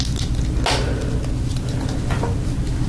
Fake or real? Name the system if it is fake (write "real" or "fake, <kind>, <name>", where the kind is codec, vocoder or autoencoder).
real